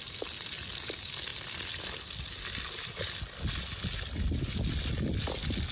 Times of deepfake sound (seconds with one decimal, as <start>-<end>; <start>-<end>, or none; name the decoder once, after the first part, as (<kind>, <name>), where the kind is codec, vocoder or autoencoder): none